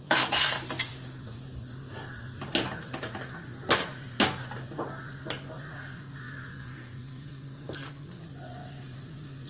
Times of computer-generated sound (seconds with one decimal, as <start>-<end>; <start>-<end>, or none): 6.5-8.2